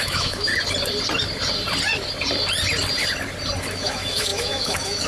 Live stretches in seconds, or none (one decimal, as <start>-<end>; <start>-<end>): 0.5-3.6